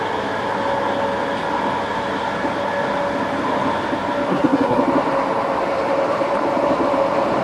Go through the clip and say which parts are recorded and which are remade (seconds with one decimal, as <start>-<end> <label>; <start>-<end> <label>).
0.0-4.3 recorded; 4.3-4.8 remade; 4.8-7.4 recorded